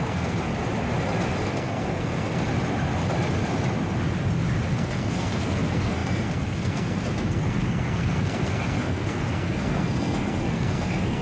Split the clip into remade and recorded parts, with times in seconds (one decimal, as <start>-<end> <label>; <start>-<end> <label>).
0.0-0.5 remade; 0.5-1.5 recorded; 1.5-2.5 remade; 2.5-4.7 recorded; 4.7-11.2 remade